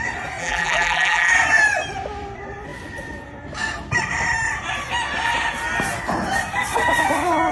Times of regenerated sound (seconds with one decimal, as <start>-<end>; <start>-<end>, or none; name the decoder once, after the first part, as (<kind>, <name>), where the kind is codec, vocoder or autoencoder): 0.4-1.3 (vocoder, BigVGAN v2)